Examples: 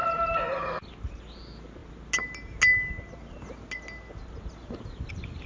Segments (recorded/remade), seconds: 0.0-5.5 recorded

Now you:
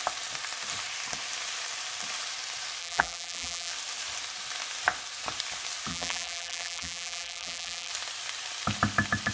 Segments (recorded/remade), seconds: 0.0-2.8 recorded; 2.8-3.7 remade; 3.7-5.9 recorded; 5.9-7.9 remade; 7.9-9.3 recorded

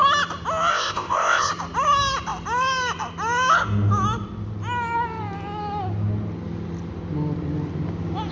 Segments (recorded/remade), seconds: 0.0-0.7 recorded; 0.7-1.5 remade; 1.5-8.3 recorded

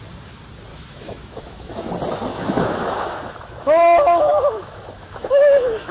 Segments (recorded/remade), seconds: 0.0-0.7 recorded; 0.7-1.9 remade; 1.9-2.3 recorded; 2.3-5.9 remade

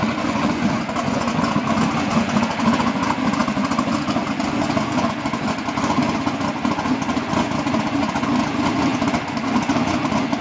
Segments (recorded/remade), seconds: 0.0-10.4 remade